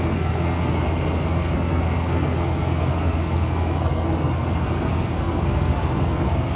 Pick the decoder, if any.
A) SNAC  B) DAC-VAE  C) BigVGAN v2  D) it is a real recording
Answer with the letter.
A